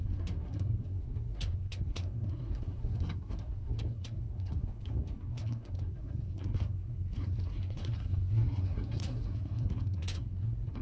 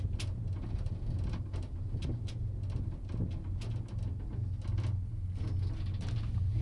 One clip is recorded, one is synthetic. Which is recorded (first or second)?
second